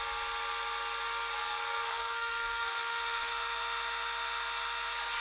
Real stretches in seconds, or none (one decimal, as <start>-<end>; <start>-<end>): 0.0-1.4; 3.3-5.2